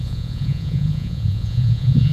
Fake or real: fake